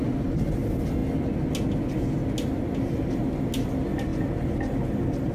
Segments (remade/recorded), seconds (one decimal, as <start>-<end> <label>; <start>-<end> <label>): 0.0-5.3 recorded